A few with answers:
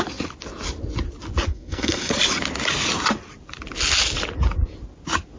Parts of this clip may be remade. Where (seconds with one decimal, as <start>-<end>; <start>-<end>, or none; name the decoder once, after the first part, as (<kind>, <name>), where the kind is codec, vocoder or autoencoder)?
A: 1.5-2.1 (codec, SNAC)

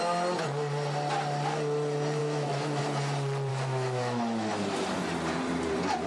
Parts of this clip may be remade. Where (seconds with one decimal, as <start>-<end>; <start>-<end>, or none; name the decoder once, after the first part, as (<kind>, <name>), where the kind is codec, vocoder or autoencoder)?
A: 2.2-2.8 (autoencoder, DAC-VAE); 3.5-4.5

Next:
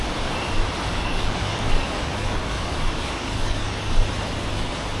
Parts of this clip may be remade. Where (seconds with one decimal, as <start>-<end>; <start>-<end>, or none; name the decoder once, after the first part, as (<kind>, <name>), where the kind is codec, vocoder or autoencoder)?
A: 0.9-3.9 (codec, DAC)